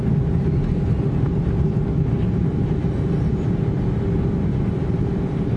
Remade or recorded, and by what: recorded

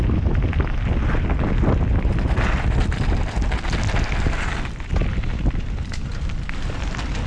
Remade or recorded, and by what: recorded